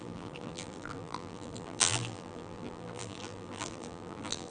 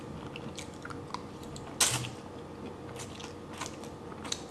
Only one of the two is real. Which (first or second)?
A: second